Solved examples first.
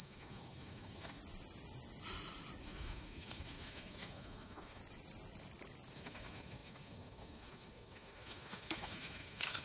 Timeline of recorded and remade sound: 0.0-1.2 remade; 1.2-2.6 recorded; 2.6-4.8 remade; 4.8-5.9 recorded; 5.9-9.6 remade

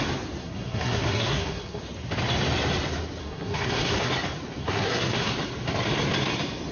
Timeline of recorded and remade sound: 0.0-0.4 recorded; 0.4-1.8 remade; 1.8-3.2 recorded; 3.2-4.1 remade; 4.1-4.6 recorded; 4.6-5.3 remade; 5.3-6.7 recorded